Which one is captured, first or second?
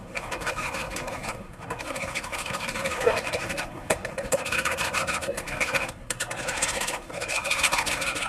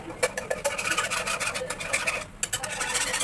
second